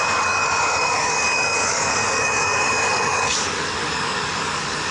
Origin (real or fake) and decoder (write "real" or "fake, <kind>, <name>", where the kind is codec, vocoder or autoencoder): fake, codec, DAC